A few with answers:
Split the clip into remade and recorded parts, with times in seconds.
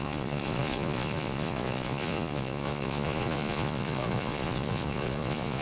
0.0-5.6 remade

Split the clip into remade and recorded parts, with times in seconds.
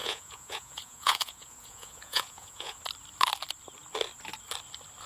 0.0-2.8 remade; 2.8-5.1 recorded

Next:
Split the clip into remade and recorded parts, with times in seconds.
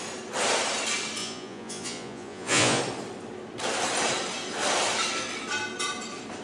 0.0-1.2 recorded; 1.2-2.8 remade; 2.8-6.4 recorded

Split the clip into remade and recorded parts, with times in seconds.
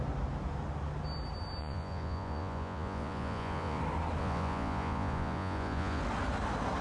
0.0-1.6 recorded; 1.6-3.8 remade; 3.8-4.2 recorded; 4.2-6.0 remade; 6.0-6.8 recorded